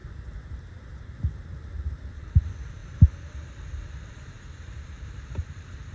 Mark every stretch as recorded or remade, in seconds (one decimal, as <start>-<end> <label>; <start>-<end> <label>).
0.0-5.9 remade